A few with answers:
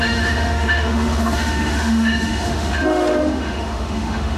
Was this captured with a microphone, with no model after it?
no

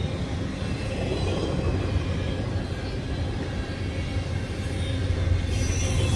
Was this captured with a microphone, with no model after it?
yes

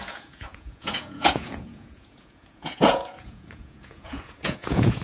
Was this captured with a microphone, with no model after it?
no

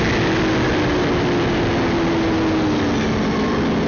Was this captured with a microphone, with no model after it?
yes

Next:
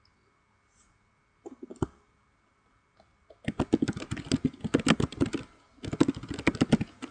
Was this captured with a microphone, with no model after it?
yes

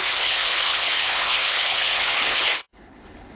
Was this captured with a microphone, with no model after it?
no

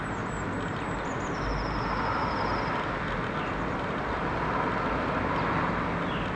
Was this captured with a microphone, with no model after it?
yes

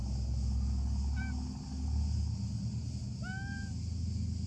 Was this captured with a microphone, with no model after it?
yes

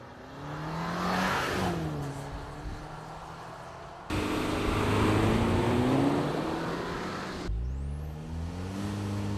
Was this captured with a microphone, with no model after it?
yes